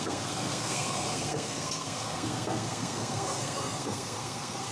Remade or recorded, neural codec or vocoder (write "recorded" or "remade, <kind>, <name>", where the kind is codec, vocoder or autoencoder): remade, codec, SNAC